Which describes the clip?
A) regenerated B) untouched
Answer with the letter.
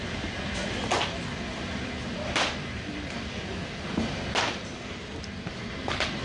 B